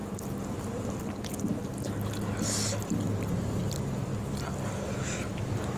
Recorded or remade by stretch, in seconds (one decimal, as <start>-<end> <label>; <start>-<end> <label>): 0.0-5.8 recorded